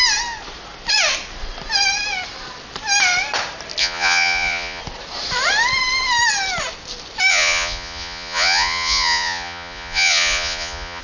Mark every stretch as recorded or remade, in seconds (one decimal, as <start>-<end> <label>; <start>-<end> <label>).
0.0-3.8 recorded; 3.8-4.8 remade; 4.8-7.3 recorded; 7.3-11.0 remade